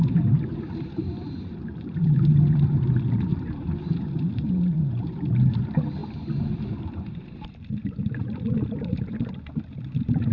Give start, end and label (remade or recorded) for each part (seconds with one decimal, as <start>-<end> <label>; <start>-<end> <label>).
0.0-10.3 remade